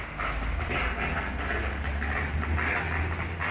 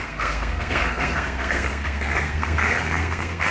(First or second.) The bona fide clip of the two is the first